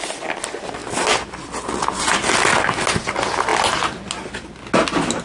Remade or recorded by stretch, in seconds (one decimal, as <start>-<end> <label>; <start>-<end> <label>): 0.0-5.2 recorded